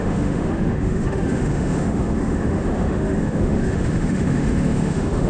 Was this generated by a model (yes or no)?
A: yes